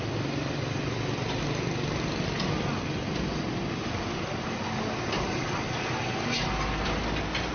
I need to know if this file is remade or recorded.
recorded